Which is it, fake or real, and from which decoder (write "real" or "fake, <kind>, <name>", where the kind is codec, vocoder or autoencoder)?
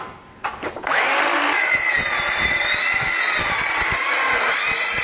real